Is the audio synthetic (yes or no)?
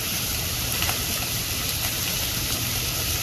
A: no